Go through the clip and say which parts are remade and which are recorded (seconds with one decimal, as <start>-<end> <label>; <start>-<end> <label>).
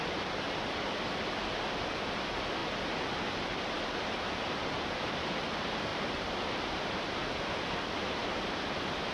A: 0.0-2.6 recorded; 2.6-3.2 remade; 3.2-5.9 recorded; 5.9-6.8 remade; 6.8-8.2 recorded; 8.2-9.1 remade